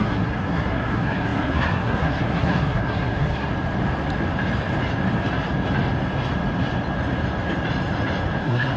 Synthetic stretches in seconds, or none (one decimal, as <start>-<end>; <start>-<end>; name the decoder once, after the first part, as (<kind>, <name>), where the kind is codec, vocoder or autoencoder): 0.0-3.5 (codec, SNAC); 8.4-8.8